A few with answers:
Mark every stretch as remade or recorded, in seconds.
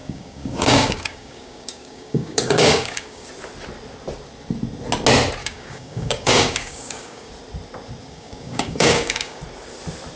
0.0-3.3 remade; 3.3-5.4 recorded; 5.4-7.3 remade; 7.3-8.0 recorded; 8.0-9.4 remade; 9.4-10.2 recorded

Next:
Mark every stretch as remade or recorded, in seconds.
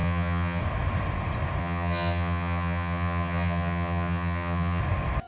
0.0-0.6 remade; 0.6-1.6 recorded; 1.6-4.8 remade; 4.8-5.3 recorded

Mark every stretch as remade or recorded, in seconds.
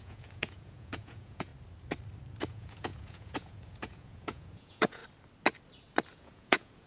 0.0-1.5 remade; 1.5-2.5 recorded; 2.5-5.0 remade; 5.0-6.1 recorded; 6.1-6.9 remade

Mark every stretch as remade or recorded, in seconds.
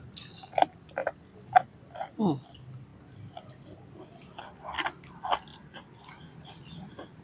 0.0-7.2 recorded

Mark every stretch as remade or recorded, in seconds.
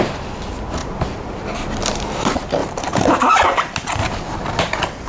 0.0-0.8 recorded; 0.8-2.0 remade; 2.0-2.6 recorded; 2.6-3.3 remade; 3.3-4.0 recorded; 4.0-4.6 remade; 4.6-5.1 recorded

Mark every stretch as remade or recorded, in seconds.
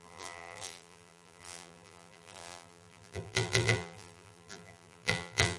0.0-5.6 remade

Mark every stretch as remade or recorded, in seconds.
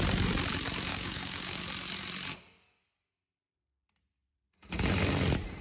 0.0-0.9 recorded; 0.9-1.6 remade; 1.6-5.6 recorded